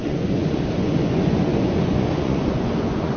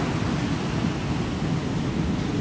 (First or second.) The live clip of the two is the second